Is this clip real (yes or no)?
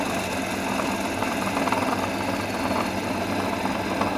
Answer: yes